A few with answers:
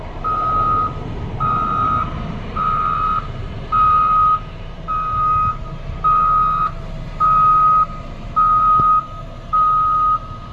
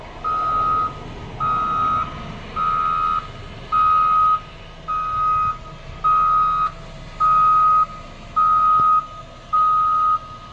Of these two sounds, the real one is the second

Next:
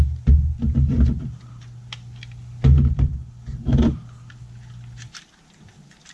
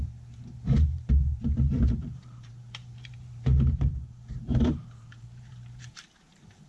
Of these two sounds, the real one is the first